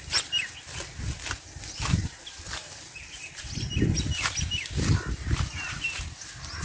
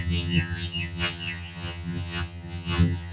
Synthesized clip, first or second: second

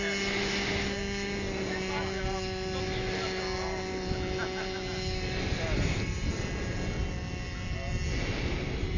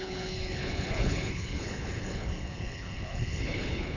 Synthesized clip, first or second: second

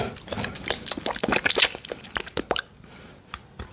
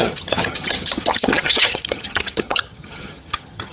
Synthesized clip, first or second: second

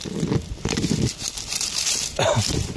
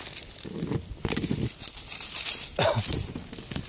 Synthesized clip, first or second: first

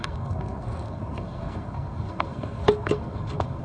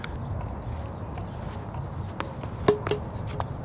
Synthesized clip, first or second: first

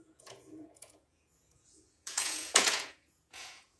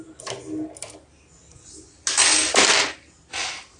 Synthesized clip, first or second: first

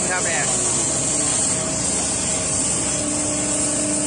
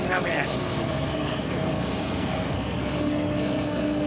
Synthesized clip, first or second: second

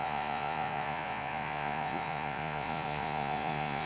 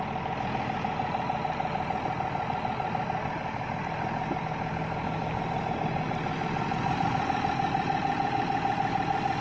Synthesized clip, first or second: first